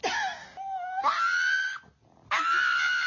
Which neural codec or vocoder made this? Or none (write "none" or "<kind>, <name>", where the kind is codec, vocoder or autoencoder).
none